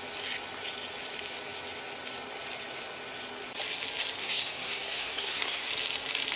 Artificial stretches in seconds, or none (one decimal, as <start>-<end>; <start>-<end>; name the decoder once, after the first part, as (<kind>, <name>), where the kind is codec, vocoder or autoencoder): 4.2-5.7 (codec, SNAC)